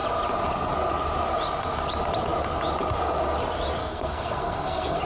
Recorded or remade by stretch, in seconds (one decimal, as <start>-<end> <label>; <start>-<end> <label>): 0.0-3.8 recorded; 3.8-5.0 remade